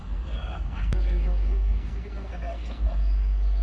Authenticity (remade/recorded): remade